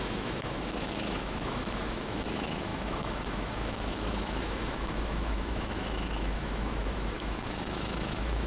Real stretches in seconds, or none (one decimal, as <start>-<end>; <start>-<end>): none